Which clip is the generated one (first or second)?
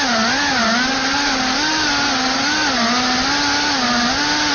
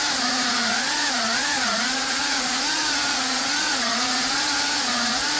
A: second